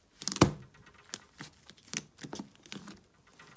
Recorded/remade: recorded